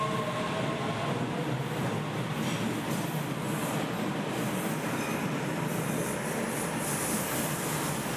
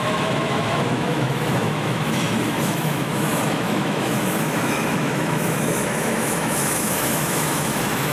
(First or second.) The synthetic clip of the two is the second